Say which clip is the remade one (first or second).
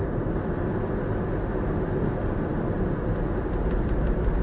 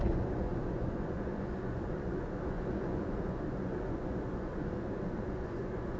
second